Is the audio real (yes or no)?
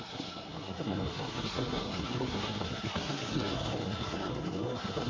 no